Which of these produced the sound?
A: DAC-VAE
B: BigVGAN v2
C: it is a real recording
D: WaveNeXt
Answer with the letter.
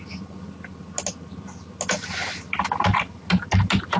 C